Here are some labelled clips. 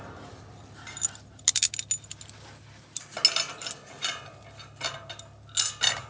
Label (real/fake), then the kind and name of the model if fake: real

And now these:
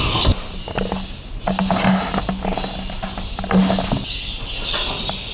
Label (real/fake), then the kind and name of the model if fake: real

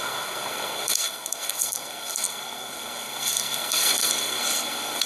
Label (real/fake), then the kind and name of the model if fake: fake, codec, SNAC